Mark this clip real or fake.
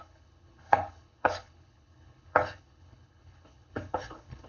fake